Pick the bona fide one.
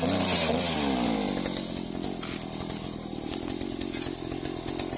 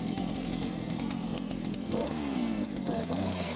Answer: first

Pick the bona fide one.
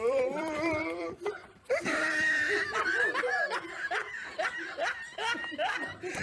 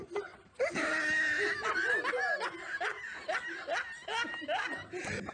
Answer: second